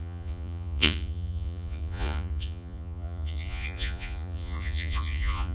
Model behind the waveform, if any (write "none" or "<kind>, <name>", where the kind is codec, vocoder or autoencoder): vocoder, Vocos